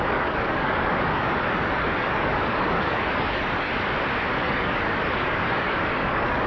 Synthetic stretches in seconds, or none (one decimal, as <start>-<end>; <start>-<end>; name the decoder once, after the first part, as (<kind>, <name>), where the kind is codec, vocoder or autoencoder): 0.0-3.7 (codec, DAC); 4.4-6.5